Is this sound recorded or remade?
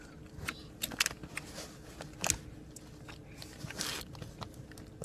recorded